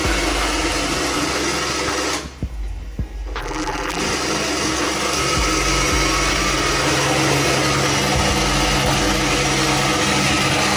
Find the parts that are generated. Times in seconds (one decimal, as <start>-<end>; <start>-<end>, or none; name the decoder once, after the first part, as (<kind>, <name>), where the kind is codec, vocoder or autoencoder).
3.4-4.0 (vocoder, BigVGAN v2)